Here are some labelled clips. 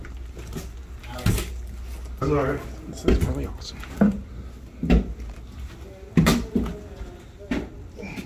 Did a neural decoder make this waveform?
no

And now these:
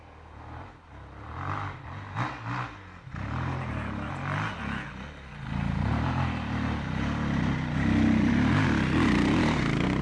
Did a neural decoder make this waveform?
no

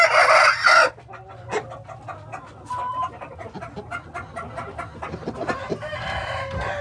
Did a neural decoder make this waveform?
no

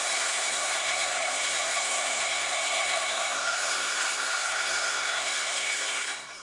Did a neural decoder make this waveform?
yes